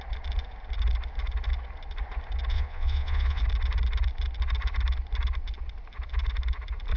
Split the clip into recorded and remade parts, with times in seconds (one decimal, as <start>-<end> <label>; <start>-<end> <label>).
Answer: 0.0-2.5 recorded; 2.5-3.4 remade; 3.4-7.0 recorded